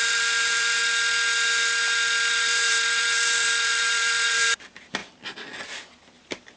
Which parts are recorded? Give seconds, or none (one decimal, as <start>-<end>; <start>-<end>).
0.8-2.3; 5.0-5.6